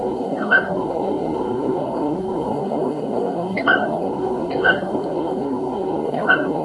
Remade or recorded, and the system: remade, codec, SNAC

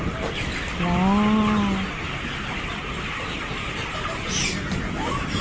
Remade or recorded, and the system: recorded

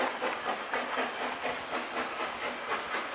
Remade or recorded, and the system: recorded